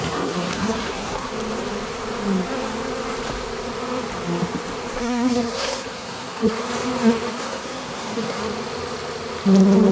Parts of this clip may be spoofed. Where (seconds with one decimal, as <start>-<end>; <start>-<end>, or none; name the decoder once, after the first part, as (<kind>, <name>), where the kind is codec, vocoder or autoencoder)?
0.0-1.3 (codec, SNAC); 4.9-6.7; 7.3-8.4